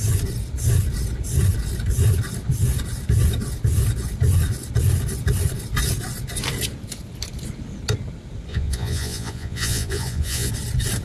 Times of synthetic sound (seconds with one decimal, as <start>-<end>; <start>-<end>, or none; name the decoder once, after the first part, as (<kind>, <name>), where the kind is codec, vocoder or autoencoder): 8.5-10.5 (vocoder, Vocos)